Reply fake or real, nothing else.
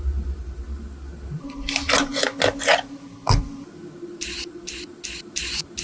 real